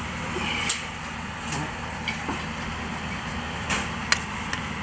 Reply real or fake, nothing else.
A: real